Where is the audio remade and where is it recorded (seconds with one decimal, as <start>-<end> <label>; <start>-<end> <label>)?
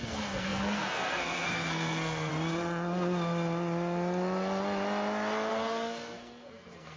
0.0-2.3 remade; 2.3-5.5 recorded; 5.5-7.0 remade